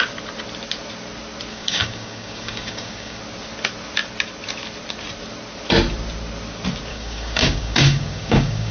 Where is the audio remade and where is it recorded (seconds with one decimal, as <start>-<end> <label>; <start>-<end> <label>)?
0.0-1.5 recorded; 1.5-3.2 remade; 3.2-6.9 recorded; 6.9-8.7 remade